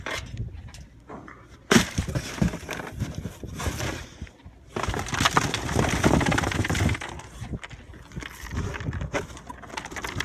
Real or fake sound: real